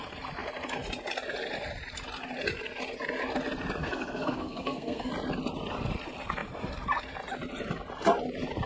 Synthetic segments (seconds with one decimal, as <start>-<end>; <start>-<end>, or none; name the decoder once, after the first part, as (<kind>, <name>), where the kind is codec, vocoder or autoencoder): 3.8-5.1 (codec, SNAC)